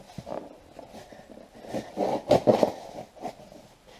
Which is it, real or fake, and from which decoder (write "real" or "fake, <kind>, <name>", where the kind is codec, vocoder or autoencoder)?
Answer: real